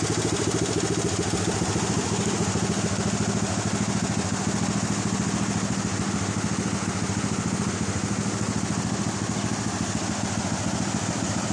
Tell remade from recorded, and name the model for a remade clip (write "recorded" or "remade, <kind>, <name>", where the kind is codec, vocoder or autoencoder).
recorded